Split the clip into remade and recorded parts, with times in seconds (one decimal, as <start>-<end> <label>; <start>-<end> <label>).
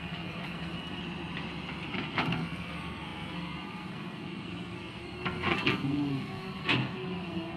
0.0-1.0 remade; 1.0-1.9 recorded; 1.9-7.6 remade